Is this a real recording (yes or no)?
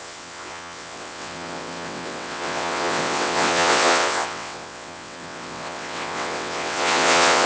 no